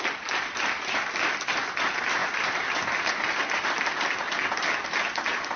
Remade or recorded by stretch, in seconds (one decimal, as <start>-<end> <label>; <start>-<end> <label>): 0.0-5.6 recorded